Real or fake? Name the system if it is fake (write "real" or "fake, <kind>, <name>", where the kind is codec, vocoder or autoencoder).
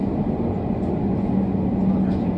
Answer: real